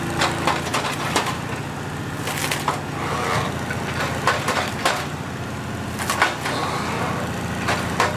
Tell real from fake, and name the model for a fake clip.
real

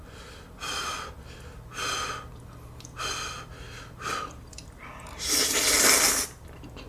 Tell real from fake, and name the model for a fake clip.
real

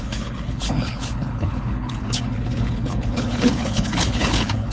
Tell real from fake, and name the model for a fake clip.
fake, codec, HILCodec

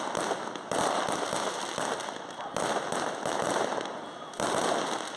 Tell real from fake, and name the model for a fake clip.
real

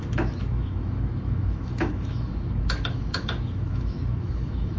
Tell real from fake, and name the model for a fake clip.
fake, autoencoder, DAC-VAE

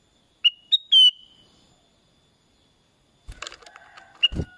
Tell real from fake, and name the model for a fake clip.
real